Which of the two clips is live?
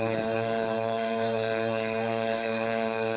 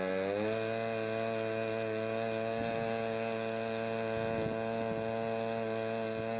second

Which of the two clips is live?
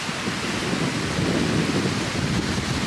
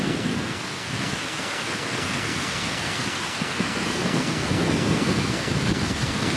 first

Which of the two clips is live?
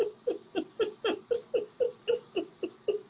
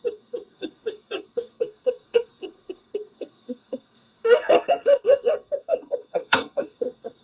first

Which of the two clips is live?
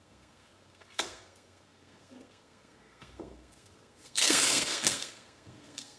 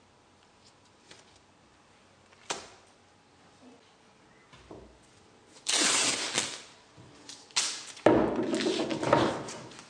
second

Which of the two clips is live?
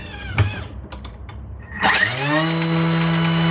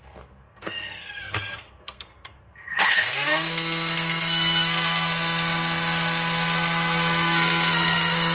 first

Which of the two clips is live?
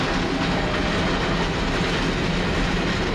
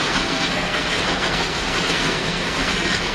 first